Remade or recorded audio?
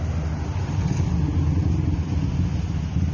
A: recorded